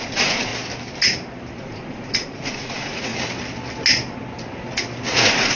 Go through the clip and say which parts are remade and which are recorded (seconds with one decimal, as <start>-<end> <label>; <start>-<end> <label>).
0.0-0.5 remade; 0.5-1.6 recorded; 1.6-3.1 remade; 3.1-5.1 recorded; 5.1-5.5 remade